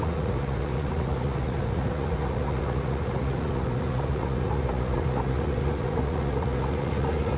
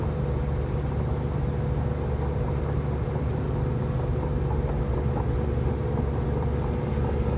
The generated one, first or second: first